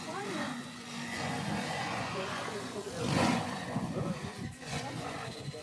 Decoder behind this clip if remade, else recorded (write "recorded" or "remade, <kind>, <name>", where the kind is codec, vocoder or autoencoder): remade, vocoder, Vocos